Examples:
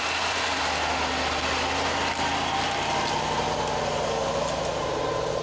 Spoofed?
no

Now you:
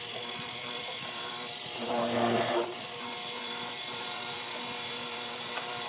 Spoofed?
yes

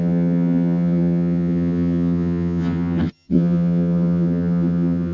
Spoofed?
yes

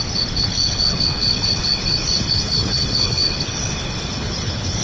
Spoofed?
yes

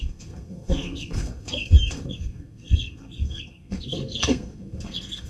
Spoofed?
yes